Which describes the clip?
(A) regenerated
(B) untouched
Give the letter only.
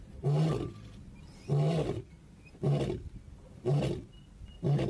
B